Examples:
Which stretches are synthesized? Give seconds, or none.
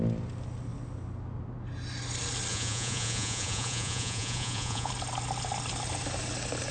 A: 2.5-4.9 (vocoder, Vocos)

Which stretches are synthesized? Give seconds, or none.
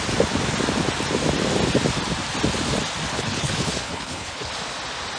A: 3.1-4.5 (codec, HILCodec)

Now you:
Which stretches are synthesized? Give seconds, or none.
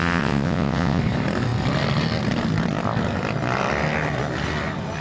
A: 0.0-1.0 (vocoder, WaveNeXt)